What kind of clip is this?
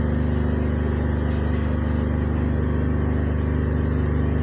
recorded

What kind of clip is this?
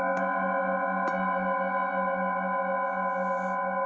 recorded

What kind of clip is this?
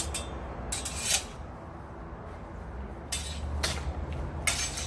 recorded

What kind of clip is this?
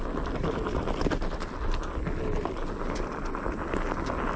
recorded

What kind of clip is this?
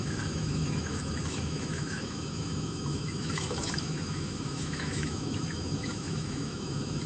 remade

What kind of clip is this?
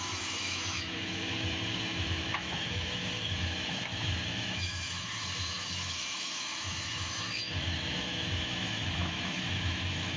remade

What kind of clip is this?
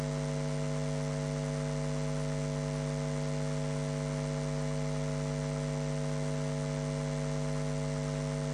recorded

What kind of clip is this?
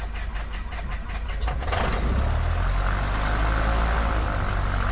recorded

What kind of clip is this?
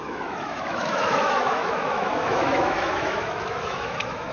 remade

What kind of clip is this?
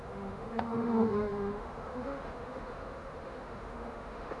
remade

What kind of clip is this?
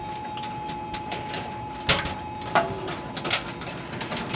recorded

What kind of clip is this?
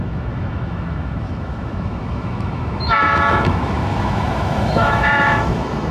remade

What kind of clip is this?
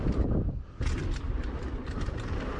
recorded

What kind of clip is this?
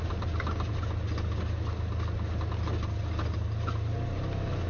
recorded